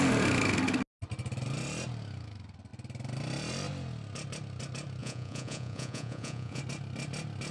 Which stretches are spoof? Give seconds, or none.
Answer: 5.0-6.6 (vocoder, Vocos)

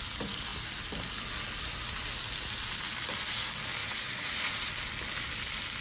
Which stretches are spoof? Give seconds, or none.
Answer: 3.8-4.7 (vocoder, Vocos)

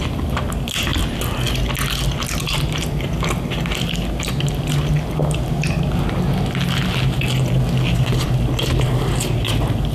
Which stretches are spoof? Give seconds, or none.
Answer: none

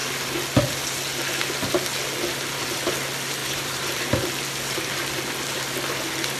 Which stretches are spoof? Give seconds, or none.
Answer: 3.4-4.0 (vocoder, BigVGAN v2)

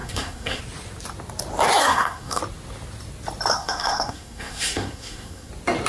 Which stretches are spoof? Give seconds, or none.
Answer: 0.0-0.6 (codec, SNAC); 1.8-2.4; 3.5-5.5